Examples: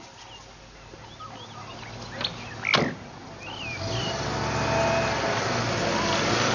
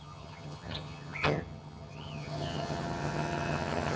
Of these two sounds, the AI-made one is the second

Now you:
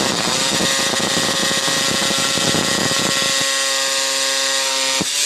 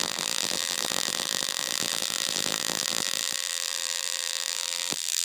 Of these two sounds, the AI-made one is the second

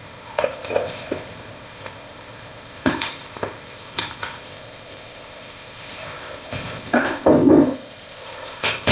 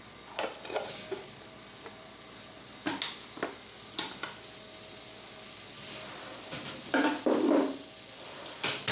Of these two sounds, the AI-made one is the first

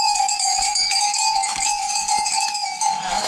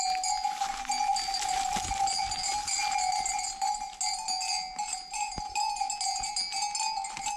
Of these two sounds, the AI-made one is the first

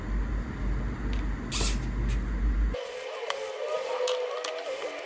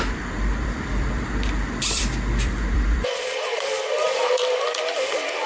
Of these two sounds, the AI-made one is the second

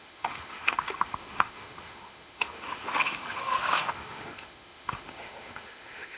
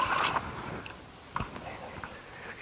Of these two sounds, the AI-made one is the first